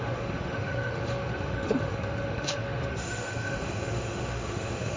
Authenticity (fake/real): fake